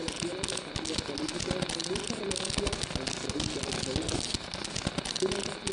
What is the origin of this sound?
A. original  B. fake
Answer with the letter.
A